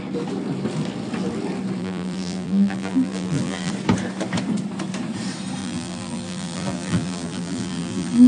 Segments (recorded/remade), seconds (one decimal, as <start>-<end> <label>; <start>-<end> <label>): 0.0-1.8 recorded; 1.8-3.7 remade; 3.7-5.6 recorded; 5.6-8.3 remade